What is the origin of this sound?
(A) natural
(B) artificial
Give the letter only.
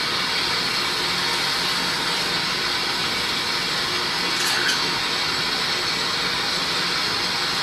A